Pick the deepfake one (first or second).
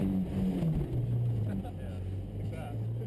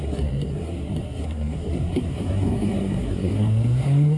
second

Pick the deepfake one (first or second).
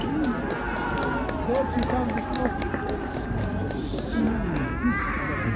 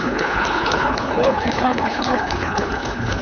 second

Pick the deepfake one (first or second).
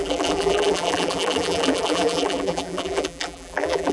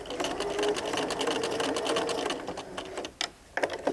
first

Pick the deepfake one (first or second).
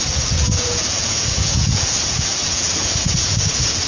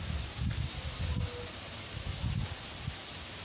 first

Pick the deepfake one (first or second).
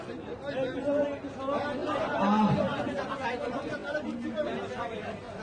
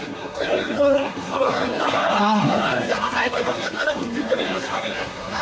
second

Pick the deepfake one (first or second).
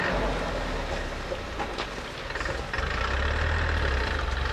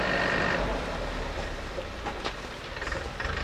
second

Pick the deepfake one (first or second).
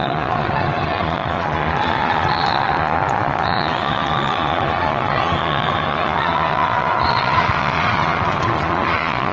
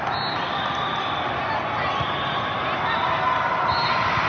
first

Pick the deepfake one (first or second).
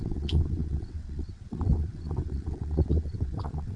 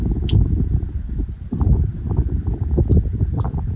first